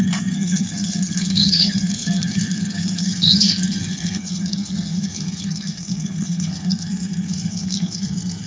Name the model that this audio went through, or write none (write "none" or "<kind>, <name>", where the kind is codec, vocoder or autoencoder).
codec, SNAC